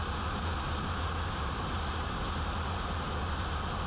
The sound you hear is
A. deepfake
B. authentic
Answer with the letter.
B